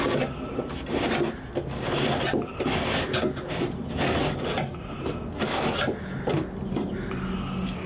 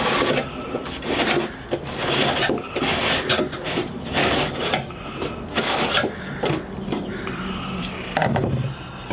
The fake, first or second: second